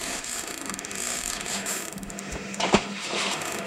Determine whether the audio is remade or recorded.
remade